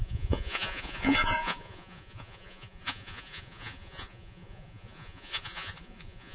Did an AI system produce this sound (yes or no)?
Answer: yes